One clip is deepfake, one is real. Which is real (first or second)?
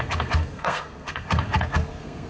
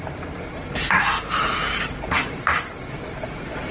second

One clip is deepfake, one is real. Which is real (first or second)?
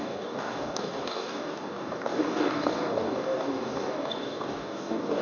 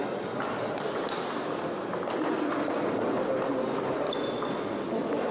second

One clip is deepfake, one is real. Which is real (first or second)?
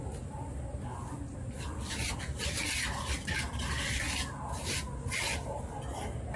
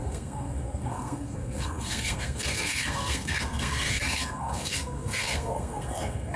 first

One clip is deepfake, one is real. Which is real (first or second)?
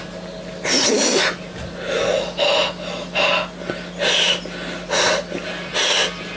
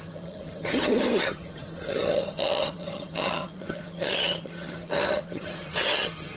first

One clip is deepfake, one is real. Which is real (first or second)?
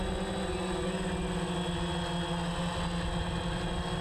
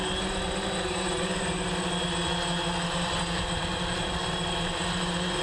first